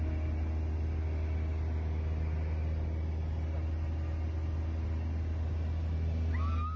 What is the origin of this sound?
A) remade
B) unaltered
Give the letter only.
B